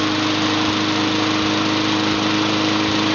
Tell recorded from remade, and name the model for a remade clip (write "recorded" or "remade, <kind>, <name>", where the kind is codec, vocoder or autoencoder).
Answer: recorded